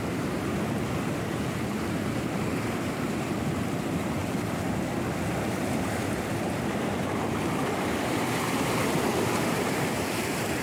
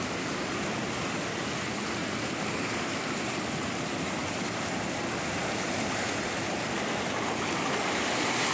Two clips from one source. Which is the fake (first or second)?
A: first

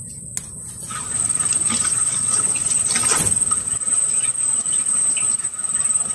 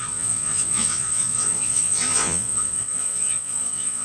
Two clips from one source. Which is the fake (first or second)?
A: second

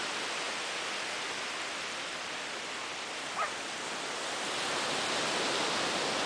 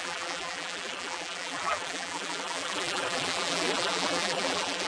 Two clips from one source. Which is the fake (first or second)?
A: second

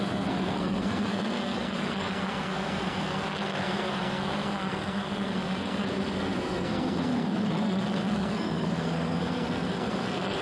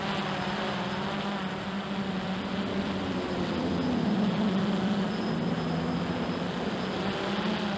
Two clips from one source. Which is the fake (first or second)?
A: first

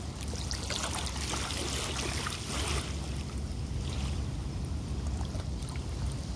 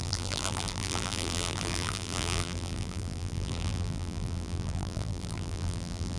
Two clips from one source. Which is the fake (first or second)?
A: second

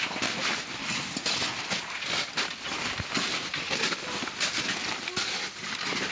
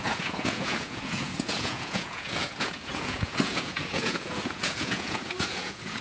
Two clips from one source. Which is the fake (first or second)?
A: second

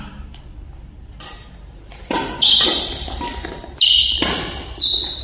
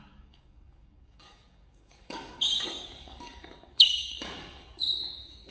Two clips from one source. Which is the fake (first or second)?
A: second